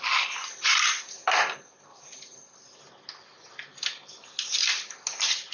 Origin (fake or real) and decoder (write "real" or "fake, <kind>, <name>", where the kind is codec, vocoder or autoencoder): real